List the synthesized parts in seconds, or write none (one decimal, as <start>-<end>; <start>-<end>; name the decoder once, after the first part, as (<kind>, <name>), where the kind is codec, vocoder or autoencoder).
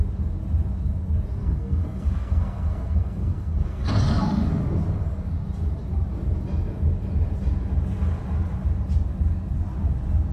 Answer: 1.4-3.9 (codec, SNAC)